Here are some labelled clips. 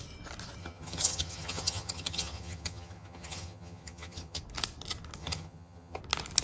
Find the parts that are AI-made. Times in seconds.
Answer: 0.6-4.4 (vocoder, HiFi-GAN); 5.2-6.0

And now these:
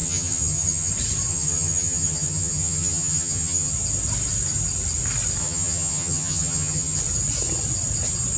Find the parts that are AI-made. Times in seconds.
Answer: 0.0-0.9 (vocoder, HiFi-GAN); 1.3-3.7; 5.4-7.0

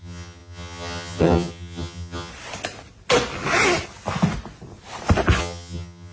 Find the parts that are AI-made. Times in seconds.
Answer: 0.0-2.3 (vocoder, HiFi-GAN); 5.4-6.1

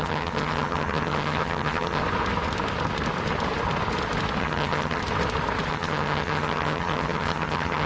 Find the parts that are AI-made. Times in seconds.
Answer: 0.0-2.0 (vocoder, HiFi-GAN); 4.4-5.0; 5.7-7.9